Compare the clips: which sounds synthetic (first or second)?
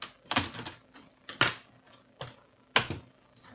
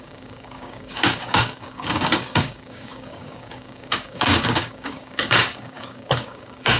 second